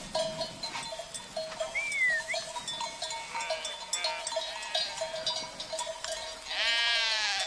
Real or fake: real